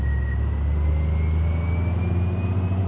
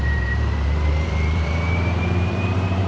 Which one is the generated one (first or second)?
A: second